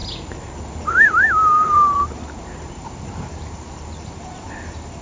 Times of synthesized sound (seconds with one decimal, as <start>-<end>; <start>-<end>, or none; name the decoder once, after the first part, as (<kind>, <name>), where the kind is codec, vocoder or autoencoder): 0.9-5.0 (vocoder, BigVGAN v2)